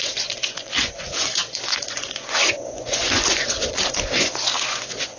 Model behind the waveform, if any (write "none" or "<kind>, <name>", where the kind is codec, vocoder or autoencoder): vocoder, Vocos